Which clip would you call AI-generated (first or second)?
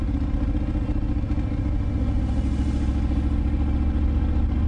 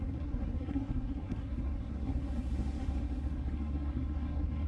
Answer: second